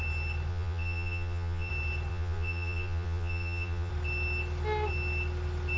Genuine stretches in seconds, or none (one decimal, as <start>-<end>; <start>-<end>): 0.0-0.5; 1.7-2.1; 3.9-5.8